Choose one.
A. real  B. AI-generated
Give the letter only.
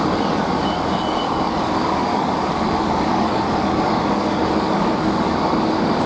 B